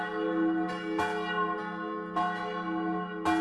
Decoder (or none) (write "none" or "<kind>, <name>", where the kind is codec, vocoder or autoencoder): none